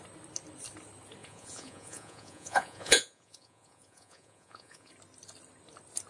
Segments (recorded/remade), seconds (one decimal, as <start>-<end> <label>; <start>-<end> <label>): 0.0-1.2 recorded; 1.2-4.9 remade; 4.9-6.1 recorded